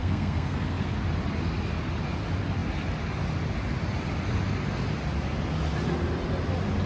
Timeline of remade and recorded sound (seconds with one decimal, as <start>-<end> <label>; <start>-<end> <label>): 0.0-0.9 remade; 0.9-6.9 recorded